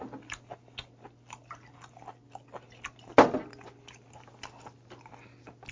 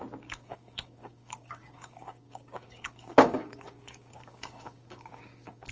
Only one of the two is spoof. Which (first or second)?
second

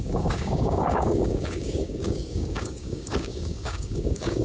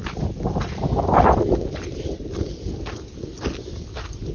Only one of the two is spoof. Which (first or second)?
first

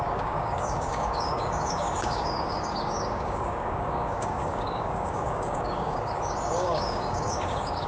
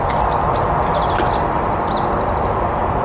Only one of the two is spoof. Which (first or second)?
first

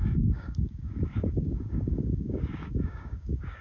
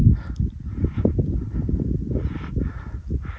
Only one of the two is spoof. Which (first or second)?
first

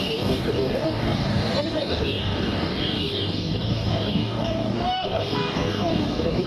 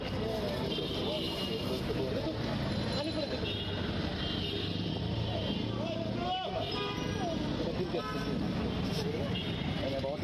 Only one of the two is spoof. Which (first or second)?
first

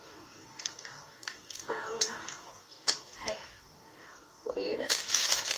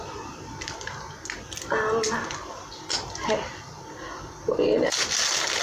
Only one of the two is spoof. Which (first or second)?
first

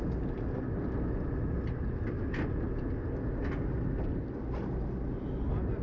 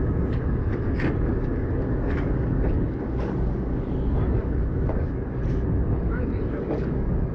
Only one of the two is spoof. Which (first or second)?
second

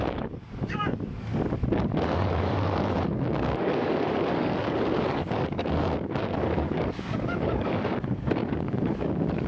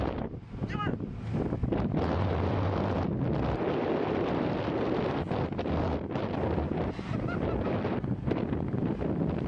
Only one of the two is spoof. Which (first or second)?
first